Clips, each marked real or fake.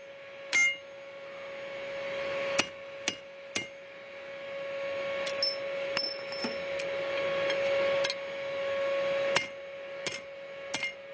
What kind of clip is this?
real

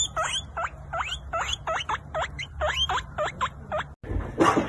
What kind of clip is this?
real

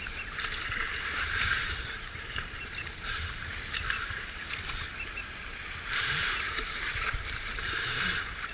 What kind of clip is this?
fake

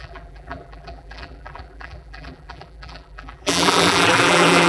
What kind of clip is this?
fake